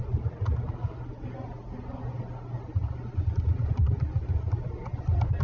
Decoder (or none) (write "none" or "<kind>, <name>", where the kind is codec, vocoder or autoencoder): none